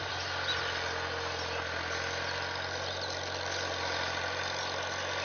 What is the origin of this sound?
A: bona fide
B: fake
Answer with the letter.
A